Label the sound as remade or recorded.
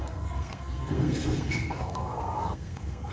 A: remade